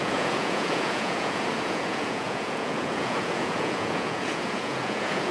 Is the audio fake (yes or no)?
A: yes